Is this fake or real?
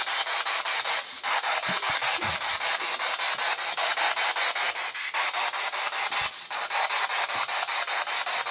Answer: real